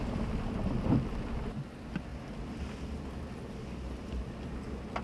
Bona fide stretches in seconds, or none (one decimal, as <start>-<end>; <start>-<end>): 0.0-5.0